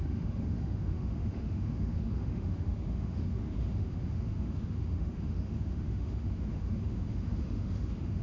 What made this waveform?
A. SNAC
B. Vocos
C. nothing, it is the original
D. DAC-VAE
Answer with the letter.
D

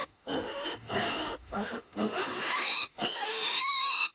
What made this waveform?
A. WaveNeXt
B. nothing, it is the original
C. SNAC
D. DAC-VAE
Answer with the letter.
D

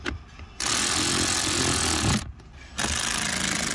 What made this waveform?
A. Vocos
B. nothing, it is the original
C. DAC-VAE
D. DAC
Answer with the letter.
B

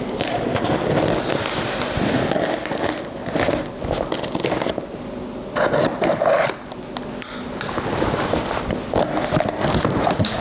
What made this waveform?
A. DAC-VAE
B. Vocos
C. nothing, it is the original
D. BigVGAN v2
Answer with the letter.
C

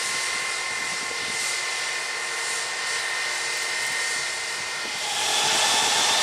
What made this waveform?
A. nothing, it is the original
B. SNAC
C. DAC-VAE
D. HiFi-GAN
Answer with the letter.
A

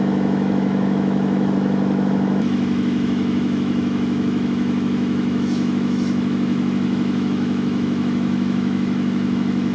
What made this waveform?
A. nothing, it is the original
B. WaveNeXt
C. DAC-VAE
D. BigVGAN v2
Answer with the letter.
C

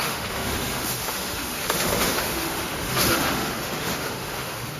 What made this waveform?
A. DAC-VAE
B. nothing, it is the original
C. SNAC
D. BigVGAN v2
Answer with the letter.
A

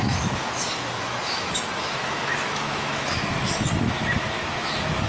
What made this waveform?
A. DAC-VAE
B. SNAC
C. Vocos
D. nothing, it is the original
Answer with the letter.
A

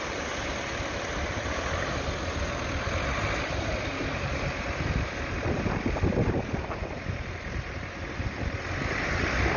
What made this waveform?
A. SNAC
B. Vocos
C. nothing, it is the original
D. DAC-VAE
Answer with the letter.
C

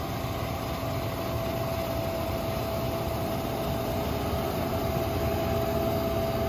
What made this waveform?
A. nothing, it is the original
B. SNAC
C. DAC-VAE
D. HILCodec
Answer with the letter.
A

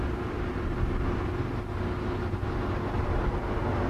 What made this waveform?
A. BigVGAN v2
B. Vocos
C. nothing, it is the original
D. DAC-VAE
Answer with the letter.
C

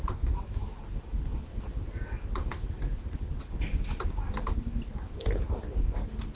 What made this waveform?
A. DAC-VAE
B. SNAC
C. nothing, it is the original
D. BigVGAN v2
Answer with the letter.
C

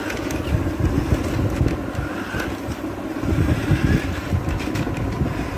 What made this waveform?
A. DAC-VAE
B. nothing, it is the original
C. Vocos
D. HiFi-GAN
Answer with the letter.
B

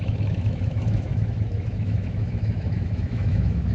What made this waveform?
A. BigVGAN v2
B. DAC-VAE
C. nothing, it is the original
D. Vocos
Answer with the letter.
B